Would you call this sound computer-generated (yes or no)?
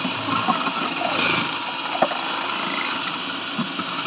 no